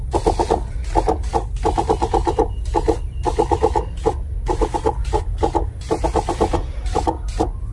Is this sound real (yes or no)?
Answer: yes